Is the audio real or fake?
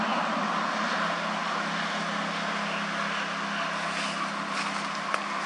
real